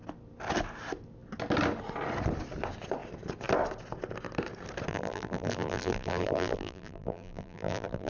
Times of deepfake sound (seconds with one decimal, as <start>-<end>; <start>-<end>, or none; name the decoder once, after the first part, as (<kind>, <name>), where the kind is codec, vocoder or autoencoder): 4.9-8.1 (vocoder, BigVGAN v2)